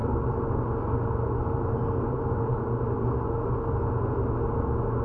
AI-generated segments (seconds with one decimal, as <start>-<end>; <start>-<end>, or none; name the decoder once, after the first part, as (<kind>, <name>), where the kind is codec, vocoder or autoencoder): none